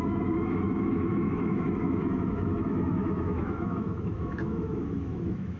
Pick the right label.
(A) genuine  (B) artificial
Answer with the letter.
B